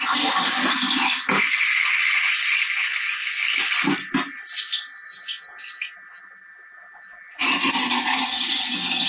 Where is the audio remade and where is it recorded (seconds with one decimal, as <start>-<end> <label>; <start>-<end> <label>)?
0.0-9.1 recorded